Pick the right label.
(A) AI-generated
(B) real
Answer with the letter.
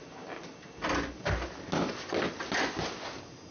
B